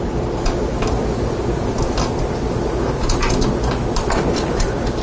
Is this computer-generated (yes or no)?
no